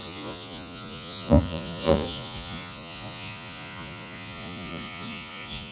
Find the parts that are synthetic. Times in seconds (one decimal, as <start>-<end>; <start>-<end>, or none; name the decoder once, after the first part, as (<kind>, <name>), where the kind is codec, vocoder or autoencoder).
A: 0.0-5.7 (vocoder, Vocos)